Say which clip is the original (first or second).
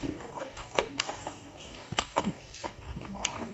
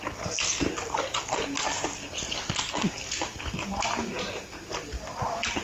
second